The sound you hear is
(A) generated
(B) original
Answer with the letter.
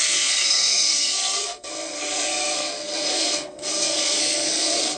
A